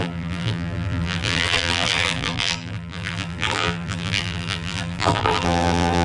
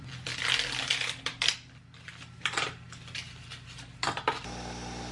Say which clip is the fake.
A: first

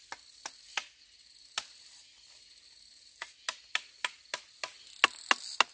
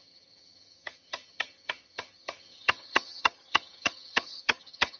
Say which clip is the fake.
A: second